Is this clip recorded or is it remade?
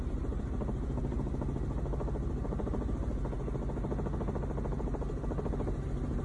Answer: recorded